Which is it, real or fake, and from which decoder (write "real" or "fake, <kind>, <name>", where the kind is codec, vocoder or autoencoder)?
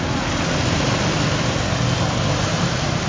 real